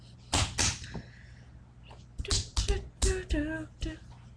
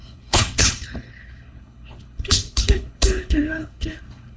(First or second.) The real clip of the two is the first